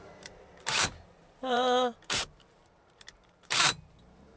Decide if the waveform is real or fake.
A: fake